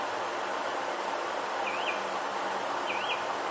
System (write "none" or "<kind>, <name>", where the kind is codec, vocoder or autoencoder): none